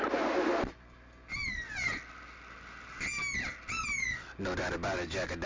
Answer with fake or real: real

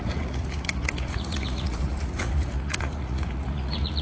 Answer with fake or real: fake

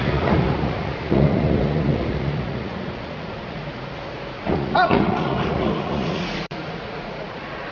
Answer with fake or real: fake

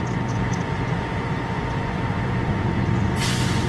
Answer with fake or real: fake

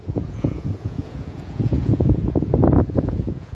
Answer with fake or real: fake